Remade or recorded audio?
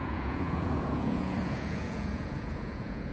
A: remade